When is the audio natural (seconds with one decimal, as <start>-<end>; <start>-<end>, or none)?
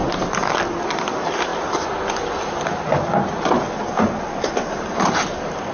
0.0-0.8; 1.5-4.9